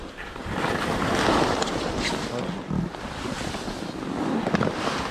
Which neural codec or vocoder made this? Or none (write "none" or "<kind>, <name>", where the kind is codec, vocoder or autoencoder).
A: none